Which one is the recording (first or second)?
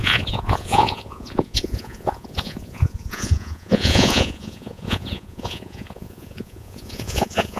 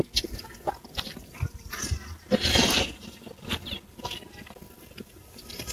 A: second